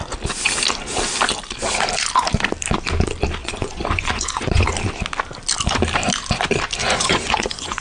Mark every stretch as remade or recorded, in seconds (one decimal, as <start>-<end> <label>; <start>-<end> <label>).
0.0-3.4 recorded; 3.4-4.7 remade; 4.7-6.8 recorded; 6.8-7.8 remade